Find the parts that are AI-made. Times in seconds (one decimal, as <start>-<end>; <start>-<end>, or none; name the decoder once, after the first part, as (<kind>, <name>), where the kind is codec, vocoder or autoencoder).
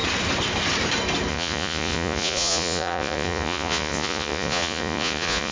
1.3-5.5 (vocoder, Vocos)